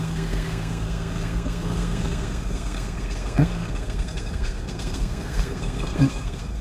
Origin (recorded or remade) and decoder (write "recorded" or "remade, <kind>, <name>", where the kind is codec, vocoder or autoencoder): remade, codec, SNAC